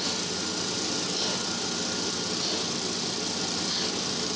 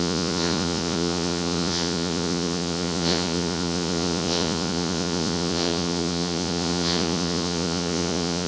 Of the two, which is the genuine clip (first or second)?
first